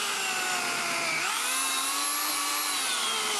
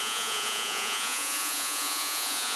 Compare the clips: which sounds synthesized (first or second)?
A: second